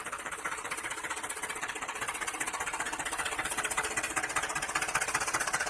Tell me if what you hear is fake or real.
fake